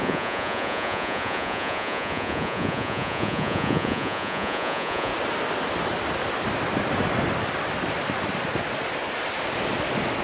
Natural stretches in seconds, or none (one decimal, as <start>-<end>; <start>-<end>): 5.1-10.2